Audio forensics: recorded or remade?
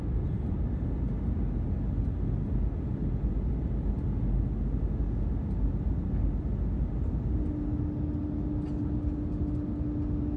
recorded